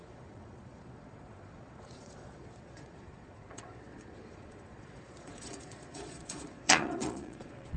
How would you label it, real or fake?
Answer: fake